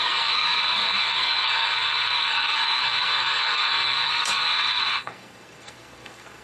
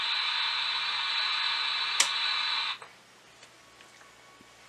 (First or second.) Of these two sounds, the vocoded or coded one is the first